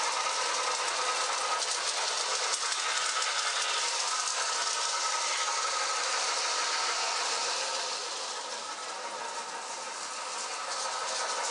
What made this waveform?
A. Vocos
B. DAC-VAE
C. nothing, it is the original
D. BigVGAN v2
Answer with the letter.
C